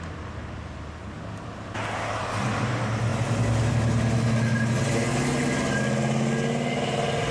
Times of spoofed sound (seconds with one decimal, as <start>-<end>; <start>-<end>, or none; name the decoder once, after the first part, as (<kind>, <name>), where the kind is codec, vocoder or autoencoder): none